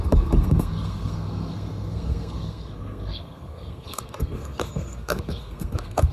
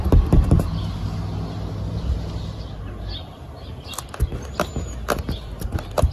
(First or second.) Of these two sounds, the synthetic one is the first